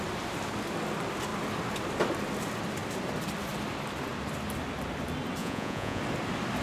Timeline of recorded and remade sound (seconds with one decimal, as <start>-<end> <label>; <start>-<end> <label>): 0.0-5.4 recorded; 5.4-6.0 remade; 6.0-6.6 recorded